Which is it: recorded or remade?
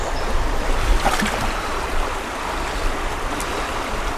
recorded